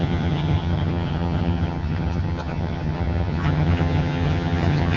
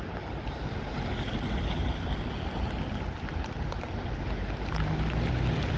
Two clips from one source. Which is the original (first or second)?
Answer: second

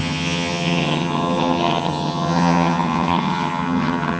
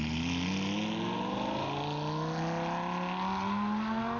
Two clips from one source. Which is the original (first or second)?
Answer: second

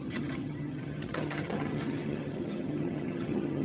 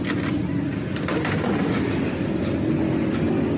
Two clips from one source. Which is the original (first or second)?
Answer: second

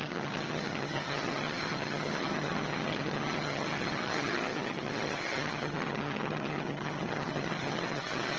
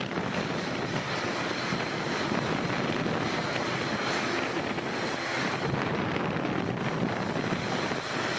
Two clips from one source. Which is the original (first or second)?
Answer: second